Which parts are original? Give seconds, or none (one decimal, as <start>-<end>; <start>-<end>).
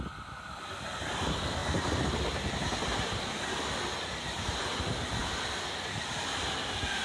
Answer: 0.0-7.0